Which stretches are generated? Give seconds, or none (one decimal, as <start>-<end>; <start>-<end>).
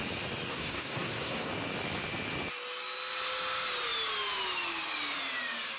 0.5-1.5